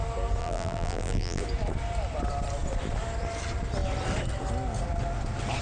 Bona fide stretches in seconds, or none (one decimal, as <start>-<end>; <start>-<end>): 0.0-0.4; 1.4-5.6